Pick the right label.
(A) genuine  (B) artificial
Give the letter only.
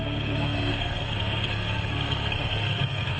B